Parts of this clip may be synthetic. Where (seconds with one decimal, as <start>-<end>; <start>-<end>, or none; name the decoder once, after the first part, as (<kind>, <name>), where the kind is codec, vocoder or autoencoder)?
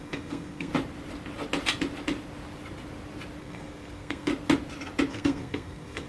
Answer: 0.0-0.7 (codec, SNAC); 3.4-4.3; 5.1-6.1